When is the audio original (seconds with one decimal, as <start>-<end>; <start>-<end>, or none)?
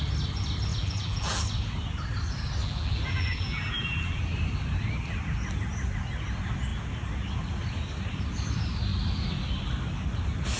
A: 0.0-0.7; 1.4-2.6; 4.2-10.6